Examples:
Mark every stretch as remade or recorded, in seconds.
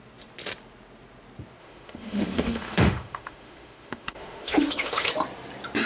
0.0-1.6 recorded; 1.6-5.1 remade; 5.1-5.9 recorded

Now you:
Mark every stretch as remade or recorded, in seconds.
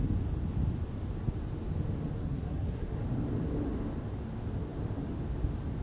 0.0-2.2 recorded; 2.2-2.9 remade; 2.9-5.8 recorded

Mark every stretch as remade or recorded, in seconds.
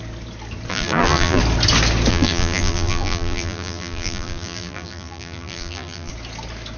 0.0-0.7 recorded; 0.7-1.4 remade; 1.4-2.1 recorded; 2.1-6.1 remade; 6.1-6.8 recorded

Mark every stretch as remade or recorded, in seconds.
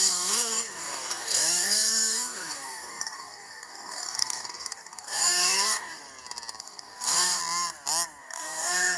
0.0-6.0 remade; 6.0-6.6 recorded; 6.6-7.4 remade; 7.4-8.2 recorded; 8.2-9.0 remade